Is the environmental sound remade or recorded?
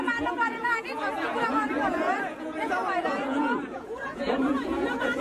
remade